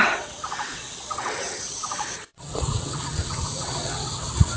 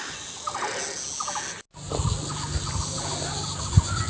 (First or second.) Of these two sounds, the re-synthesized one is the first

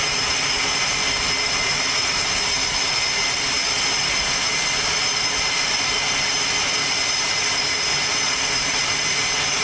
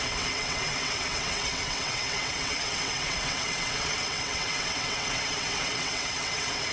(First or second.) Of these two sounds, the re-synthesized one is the second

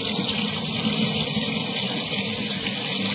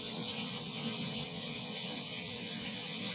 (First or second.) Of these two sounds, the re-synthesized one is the second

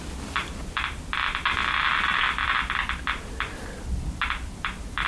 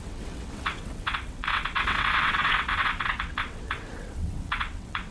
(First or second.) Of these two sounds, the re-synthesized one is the second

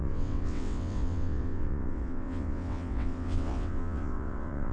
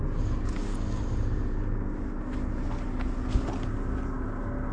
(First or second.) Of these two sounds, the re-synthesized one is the first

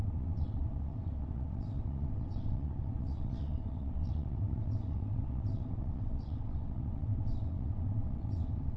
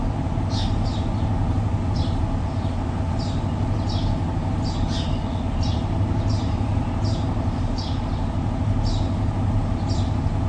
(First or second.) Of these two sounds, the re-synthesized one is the first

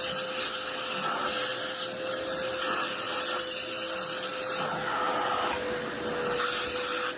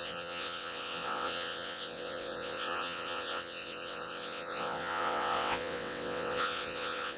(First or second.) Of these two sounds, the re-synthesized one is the second